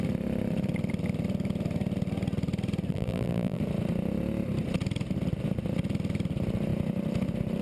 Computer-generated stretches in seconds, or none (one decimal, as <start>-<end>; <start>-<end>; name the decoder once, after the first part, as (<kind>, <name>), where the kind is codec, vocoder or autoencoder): 2.9-3.6 (vocoder, BigVGAN v2)